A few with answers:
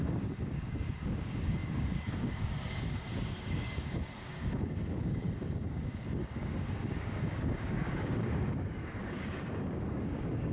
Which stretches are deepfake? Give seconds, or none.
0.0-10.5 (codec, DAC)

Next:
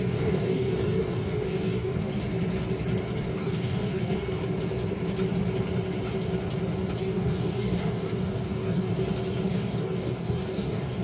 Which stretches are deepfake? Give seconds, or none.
0.0-2.1 (codec, DAC); 3.2-4.4; 7.0-8.9; 9.5-11.0

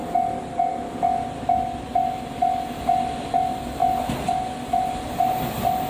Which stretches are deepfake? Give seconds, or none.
none

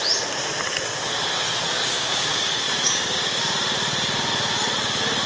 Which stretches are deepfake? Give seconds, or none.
1.8-3.4 (codec, DAC)